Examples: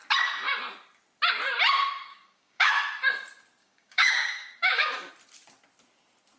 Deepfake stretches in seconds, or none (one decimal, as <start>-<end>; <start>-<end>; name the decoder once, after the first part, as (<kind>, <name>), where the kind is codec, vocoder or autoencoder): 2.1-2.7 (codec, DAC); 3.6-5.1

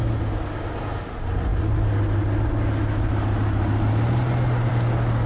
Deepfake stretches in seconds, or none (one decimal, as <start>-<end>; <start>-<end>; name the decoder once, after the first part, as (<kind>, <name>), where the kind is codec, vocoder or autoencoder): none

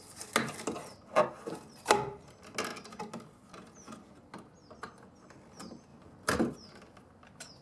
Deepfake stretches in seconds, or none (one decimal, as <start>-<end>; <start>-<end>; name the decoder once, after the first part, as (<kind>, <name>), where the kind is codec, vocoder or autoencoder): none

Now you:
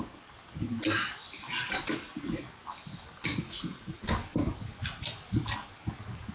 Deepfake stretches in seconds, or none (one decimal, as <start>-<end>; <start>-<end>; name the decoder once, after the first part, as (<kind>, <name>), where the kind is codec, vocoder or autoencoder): 3.3-4.0 (vocoder, Vocos)

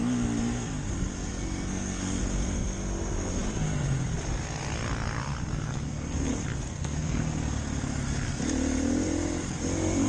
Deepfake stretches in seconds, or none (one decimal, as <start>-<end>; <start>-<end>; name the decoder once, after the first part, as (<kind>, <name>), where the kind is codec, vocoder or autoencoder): 1.3-2.2 (codec, SNAC); 5.5-6.3; 6.7-7.2

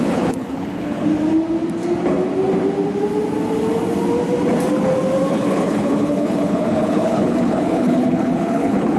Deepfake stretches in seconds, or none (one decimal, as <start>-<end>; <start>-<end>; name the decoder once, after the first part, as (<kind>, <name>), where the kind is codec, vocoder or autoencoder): 0.0-1.1 (codec, HILCodec); 5.3-9.0

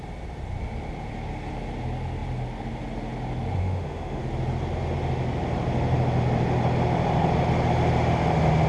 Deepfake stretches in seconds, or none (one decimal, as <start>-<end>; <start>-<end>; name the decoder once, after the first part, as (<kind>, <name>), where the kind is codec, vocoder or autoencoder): 3.6-4.2 (autoencoder, DAC-VAE)

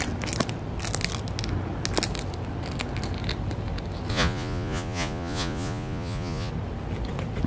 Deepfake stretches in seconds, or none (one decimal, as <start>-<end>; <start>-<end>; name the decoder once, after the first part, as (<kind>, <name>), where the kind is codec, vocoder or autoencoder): 4.1-6.5 (vocoder, Vocos)